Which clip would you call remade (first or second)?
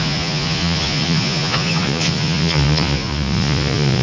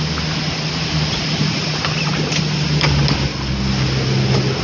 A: first